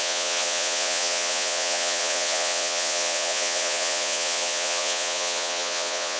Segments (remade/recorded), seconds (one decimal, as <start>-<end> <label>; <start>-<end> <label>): 0.0-6.2 remade